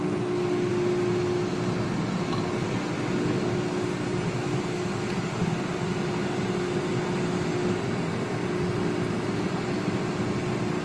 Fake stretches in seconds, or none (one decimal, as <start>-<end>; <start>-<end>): none